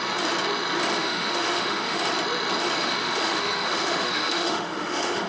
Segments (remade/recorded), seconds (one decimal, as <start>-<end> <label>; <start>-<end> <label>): 0.0-1.0 recorded; 1.0-2.0 remade; 2.0-2.8 recorded; 2.8-5.3 remade

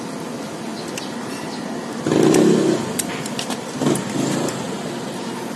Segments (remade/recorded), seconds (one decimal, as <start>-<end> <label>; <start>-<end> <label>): 0.0-5.6 recorded

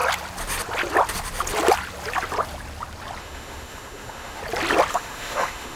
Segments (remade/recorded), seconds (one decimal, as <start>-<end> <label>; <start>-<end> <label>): 0.0-3.2 recorded; 3.2-4.4 remade; 4.4-4.9 recorded; 4.9-5.8 remade